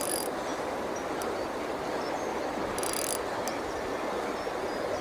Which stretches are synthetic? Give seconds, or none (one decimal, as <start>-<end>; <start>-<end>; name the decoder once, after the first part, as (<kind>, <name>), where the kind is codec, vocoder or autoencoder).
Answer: none

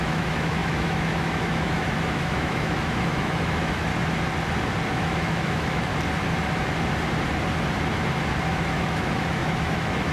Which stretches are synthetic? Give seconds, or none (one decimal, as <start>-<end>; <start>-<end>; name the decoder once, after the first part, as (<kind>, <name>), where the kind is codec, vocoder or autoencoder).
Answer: 0.0-3.9 (autoencoder, DAC-VAE); 4.9-5.9; 8.5-10.1

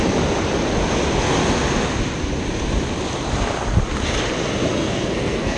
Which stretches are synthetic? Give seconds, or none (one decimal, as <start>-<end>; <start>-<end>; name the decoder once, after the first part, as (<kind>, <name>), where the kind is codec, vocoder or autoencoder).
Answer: 4.7-5.6 (codec, SNAC)

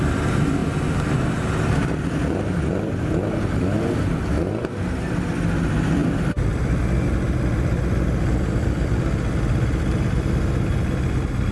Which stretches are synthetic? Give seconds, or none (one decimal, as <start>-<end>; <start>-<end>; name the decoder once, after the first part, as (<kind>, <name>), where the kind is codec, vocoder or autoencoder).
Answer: none

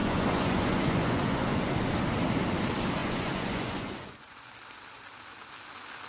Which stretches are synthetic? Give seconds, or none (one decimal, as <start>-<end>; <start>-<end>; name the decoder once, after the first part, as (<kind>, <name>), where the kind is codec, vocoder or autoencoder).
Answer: 0.0-1.7 (vocoder, Vocos); 3.0-4.5

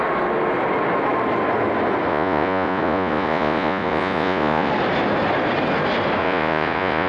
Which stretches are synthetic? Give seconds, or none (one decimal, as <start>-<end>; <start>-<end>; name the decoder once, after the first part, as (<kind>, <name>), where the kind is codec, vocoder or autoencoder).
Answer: 2.1-4.7 (vocoder, Vocos); 6.2-7.1